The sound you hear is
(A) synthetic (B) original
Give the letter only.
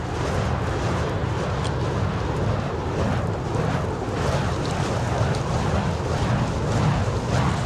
B